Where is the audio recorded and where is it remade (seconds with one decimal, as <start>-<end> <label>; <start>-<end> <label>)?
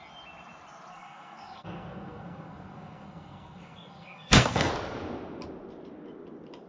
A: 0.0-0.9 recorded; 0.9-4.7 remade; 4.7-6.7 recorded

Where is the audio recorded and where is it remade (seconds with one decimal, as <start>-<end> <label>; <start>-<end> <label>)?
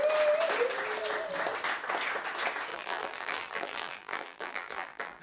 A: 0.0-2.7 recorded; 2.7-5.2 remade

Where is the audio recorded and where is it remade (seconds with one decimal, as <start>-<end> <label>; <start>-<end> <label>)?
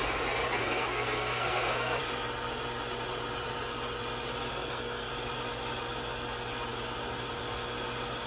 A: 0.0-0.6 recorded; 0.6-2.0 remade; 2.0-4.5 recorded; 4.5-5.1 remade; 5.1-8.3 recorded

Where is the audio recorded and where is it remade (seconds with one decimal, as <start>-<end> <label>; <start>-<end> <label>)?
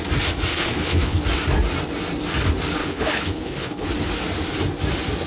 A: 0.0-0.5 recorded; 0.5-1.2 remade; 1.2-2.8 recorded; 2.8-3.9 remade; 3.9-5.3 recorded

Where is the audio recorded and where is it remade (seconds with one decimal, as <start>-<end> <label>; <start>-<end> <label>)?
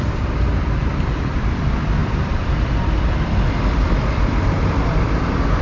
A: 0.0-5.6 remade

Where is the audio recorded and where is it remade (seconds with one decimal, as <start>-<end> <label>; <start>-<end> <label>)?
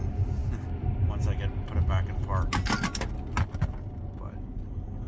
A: 0.0-5.1 recorded